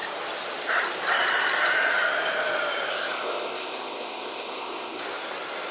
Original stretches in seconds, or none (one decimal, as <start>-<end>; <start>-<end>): 0.0-2.9; 5.0-5.7